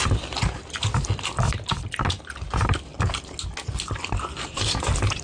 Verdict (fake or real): real